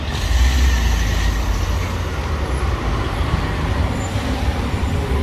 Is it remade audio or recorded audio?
recorded